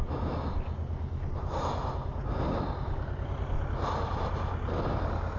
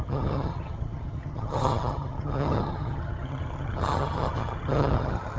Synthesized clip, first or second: second